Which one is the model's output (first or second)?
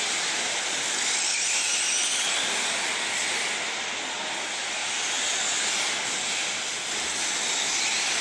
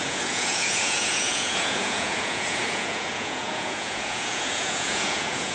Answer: second